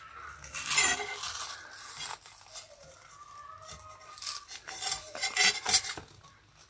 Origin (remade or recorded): recorded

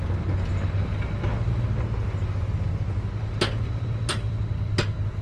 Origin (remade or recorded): recorded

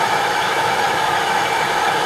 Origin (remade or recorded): remade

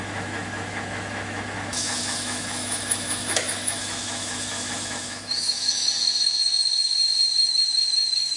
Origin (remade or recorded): remade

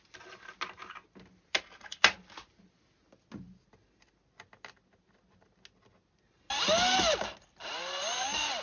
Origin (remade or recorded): recorded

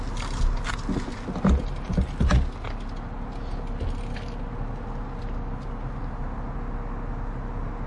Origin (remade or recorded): recorded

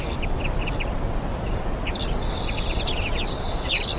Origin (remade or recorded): recorded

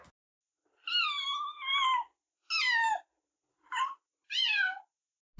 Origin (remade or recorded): recorded